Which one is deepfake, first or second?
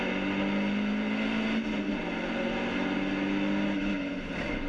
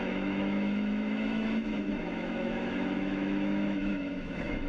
second